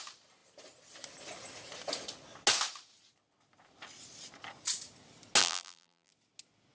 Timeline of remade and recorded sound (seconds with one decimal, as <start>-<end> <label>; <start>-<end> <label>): 0.0-5.4 recorded; 5.4-6.1 remade; 6.1-6.7 recorded